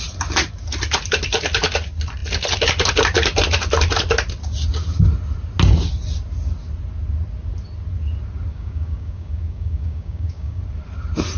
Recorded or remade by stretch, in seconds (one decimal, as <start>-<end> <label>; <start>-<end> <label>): 0.0-8.5 recorded; 8.5-10.6 remade; 10.6-11.4 recorded

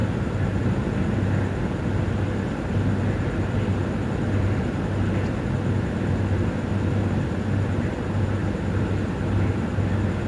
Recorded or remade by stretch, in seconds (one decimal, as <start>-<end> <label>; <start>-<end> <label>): 0.0-10.3 recorded

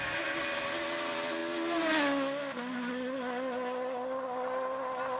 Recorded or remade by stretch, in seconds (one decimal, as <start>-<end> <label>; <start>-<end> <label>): 0.0-5.2 recorded

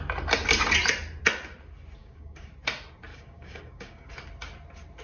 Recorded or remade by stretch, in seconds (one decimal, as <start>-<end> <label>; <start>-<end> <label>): 0.0-2.0 recorded; 2.0-2.5 remade; 2.5-3.1 recorded; 3.1-4.1 remade; 4.1-5.0 recorded